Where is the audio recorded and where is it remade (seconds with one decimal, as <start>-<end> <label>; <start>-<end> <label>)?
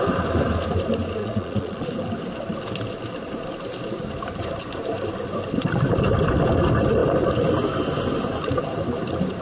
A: 0.0-1.2 recorded; 1.2-1.9 remade; 1.9-9.4 recorded